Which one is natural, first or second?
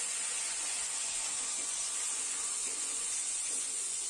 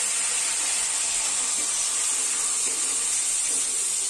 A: second